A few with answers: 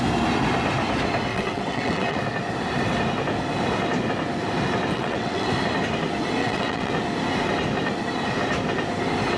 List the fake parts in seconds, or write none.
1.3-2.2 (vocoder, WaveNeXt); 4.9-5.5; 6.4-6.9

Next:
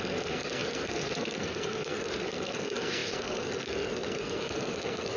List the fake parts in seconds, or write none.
0.0-5.2 (codec, SNAC)